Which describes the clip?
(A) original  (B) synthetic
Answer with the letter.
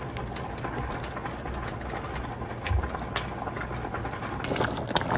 A